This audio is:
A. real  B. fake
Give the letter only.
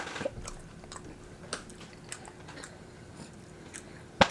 A